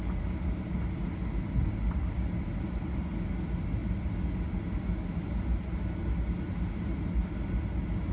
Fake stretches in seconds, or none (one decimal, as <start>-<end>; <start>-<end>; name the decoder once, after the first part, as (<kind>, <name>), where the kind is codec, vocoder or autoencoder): none